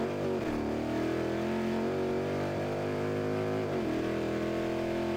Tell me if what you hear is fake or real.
real